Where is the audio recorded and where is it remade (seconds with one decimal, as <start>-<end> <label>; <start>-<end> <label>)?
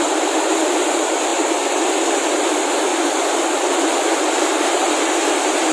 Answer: 0.0-2.9 recorded; 2.9-4.1 remade; 4.1-5.7 recorded